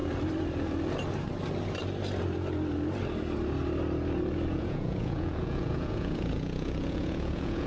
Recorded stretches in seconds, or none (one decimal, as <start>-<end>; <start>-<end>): 0.0-4.5